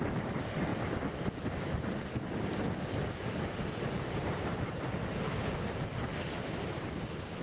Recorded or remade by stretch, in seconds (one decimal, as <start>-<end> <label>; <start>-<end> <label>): 0.0-7.4 recorded

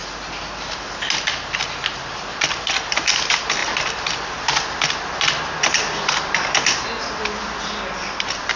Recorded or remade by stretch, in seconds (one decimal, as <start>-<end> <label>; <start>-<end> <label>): 0.0-2.3 recorded; 2.3-8.6 remade

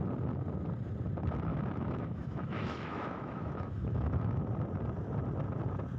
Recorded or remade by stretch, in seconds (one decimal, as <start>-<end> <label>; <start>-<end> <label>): 0.0-1.5 recorded; 1.5-4.4 remade; 4.4-6.0 recorded

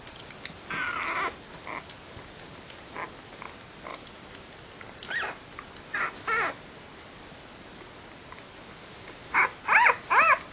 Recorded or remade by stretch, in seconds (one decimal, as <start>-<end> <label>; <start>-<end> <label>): 0.0-10.5 recorded